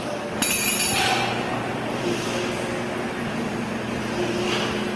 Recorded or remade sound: recorded